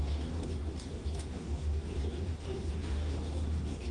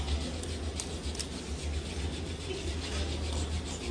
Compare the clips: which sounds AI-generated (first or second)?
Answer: first